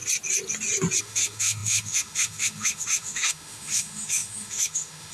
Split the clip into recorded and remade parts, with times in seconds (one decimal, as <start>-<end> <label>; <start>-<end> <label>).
0.0-1.0 recorded; 1.0-5.1 remade